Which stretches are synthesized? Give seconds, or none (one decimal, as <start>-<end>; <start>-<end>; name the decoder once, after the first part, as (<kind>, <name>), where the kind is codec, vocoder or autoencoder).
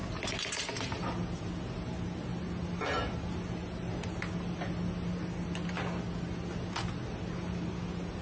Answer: none